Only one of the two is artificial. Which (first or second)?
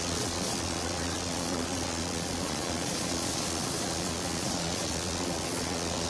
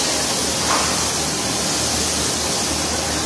first